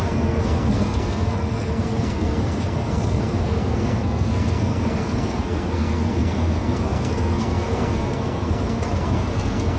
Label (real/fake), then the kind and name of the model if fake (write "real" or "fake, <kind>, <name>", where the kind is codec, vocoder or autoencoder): fake, codec, SNAC